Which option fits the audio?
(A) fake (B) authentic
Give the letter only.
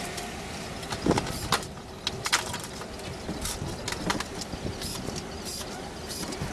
B